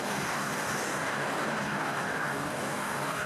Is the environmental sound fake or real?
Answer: fake